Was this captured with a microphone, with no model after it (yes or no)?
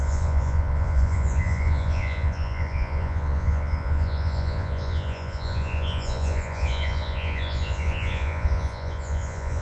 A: no